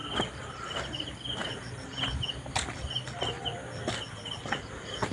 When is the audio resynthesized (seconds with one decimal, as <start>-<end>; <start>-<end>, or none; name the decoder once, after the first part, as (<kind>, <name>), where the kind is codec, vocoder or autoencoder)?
none